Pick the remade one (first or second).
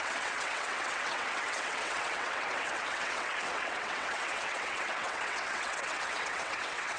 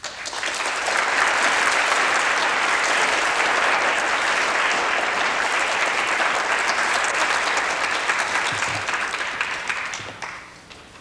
first